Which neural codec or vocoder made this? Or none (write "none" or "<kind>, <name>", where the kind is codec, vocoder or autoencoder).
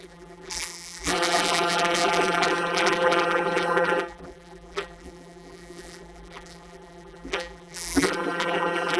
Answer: vocoder, BigVGAN v2